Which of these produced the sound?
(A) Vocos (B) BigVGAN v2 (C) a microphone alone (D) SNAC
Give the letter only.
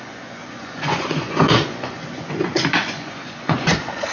A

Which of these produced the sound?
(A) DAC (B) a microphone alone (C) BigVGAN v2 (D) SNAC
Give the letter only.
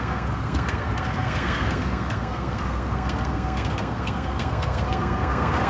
D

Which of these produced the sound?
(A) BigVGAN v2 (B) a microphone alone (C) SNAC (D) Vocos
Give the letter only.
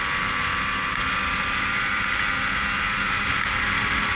B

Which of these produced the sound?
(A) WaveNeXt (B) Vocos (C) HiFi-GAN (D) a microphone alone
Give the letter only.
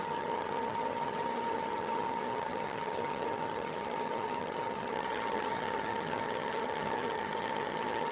C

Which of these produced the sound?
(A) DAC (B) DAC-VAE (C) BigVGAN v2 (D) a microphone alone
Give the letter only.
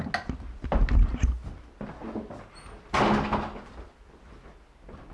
D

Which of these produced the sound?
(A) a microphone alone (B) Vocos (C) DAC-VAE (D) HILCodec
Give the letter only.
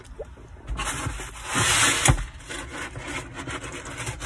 A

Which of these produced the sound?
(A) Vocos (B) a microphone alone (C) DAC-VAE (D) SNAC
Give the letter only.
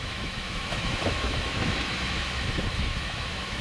C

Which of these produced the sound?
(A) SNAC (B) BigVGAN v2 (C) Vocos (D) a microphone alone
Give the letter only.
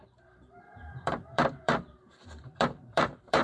B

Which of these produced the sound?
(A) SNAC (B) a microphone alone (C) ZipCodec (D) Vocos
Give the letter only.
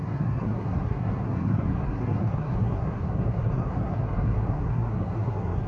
A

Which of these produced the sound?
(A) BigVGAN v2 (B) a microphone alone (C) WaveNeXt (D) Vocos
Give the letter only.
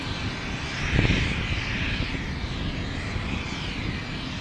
B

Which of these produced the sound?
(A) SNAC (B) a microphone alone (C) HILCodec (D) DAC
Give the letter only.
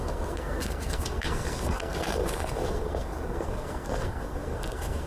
A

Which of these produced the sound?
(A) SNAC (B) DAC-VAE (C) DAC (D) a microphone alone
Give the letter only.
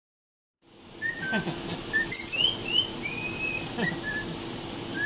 D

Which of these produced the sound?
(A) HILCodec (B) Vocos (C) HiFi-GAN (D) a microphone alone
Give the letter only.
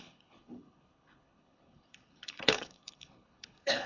A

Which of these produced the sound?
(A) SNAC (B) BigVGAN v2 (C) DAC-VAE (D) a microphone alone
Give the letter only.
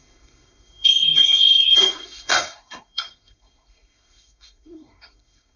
A